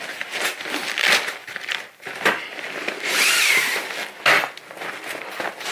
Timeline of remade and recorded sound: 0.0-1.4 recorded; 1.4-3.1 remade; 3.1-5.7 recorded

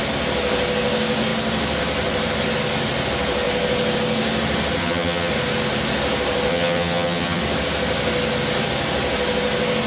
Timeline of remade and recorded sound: 0.0-4.8 recorded; 4.8-5.3 remade; 5.3-6.5 recorded; 6.5-7.4 remade; 7.4-9.9 recorded